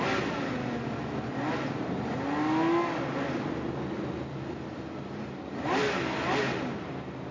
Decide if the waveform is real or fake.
real